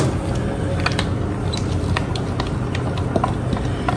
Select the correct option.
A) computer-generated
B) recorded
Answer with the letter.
B